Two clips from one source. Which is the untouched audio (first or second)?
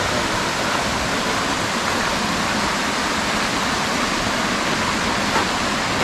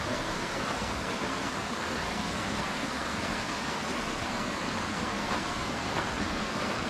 first